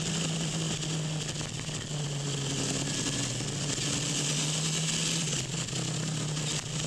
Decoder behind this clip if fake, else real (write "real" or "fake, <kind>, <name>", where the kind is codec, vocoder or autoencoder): real